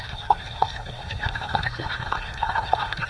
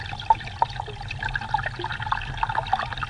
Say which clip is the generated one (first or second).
first